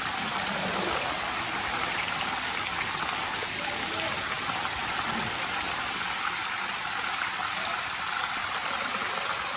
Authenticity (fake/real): real